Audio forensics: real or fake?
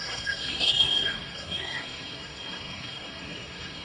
fake